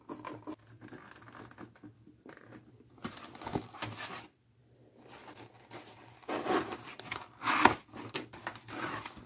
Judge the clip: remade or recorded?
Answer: recorded